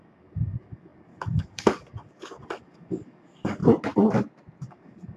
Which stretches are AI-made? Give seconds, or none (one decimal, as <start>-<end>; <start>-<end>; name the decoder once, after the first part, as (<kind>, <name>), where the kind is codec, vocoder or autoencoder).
0.0-3.6 (codec, DAC); 4.6-5.2

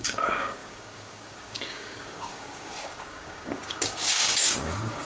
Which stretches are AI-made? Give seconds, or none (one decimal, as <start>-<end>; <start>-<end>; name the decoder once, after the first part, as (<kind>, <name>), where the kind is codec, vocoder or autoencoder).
0.0-5.0 (codec, DAC)

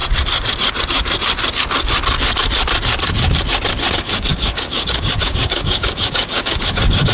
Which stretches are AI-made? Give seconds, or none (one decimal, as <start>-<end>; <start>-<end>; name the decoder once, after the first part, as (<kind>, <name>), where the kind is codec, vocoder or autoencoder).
3.9-7.1 (codec, DAC)

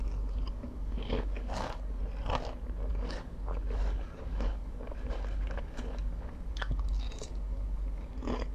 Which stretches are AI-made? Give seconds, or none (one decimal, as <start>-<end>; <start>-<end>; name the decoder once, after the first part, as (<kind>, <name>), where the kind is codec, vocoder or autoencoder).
0.0-2.0 (codec, DAC); 2.9-8.5

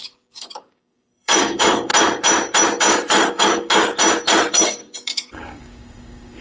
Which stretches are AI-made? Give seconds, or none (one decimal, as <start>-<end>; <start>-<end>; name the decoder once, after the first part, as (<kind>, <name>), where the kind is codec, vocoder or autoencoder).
0.0-1.9 (codec, DAC); 2.8-3.9; 4.5-6.4

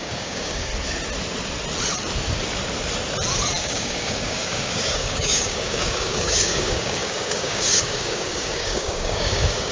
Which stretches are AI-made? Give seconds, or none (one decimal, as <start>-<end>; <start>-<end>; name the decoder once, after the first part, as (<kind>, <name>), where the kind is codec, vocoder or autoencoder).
0.0-0.7 (codec, DAC); 3.6-9.7

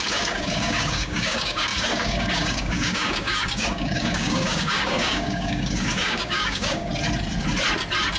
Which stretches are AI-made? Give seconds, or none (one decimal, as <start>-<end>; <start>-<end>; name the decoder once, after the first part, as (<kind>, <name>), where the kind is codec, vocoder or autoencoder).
0.0-6.9 (codec, DAC)

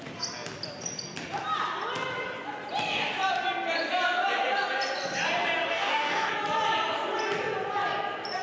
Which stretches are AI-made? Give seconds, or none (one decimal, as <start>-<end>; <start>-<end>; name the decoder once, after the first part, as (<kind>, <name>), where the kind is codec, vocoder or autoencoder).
5.7-6.3 (codec, DAC)